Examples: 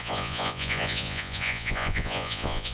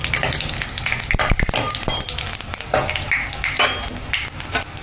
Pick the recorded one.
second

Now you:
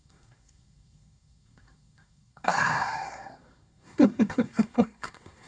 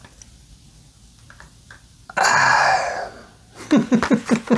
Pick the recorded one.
second